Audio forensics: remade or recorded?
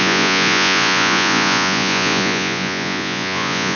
remade